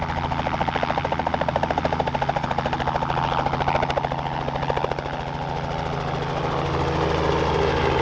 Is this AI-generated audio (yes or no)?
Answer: no